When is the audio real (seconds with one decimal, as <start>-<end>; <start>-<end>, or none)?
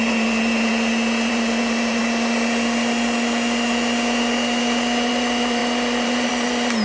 0.7-1.3; 2.0-5.1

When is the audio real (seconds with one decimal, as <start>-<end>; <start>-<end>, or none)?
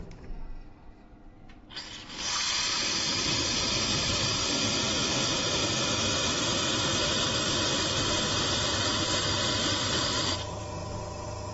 1.0-2.6; 3.3-3.9; 5.6-9.7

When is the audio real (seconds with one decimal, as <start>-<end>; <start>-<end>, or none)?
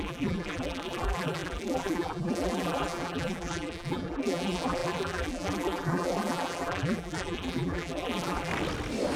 8.5-9.2